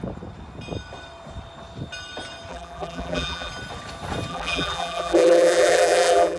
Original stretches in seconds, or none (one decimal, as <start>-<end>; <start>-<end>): 0.0-2.5; 3.5-4.3